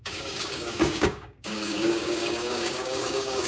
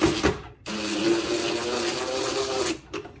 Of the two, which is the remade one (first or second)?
first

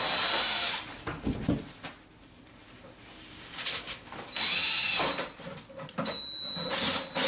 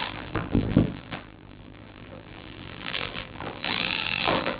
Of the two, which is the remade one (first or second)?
second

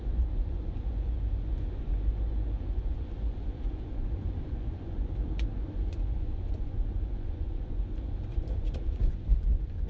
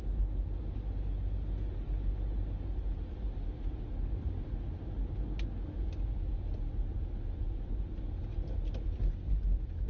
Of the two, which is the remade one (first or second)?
first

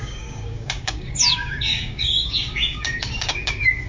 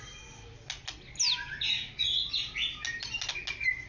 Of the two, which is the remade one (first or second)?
first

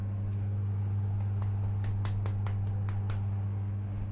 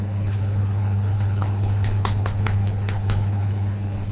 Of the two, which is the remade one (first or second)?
second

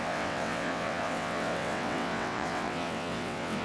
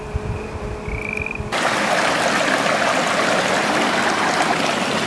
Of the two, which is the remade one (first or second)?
first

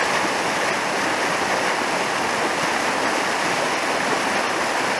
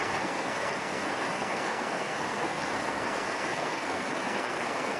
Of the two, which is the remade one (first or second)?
second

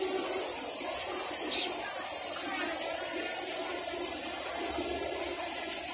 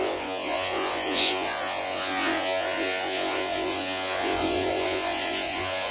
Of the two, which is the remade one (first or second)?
second